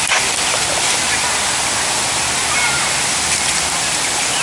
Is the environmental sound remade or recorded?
remade